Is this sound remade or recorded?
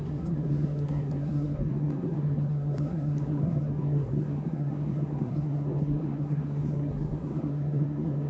remade